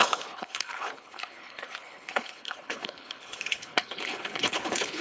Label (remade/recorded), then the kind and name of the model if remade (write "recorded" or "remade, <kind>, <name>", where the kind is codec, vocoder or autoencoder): remade, codec, HILCodec